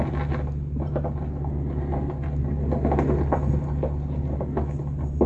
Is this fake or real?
real